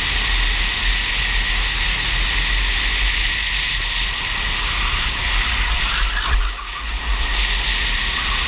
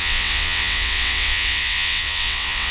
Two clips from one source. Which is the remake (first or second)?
second